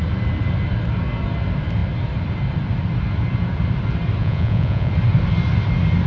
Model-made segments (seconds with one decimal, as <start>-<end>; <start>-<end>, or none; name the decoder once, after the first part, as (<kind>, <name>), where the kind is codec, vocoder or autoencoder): 4.2-4.9 (vocoder, Vocos)